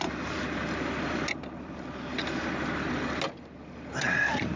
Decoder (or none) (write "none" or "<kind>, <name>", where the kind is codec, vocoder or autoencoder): none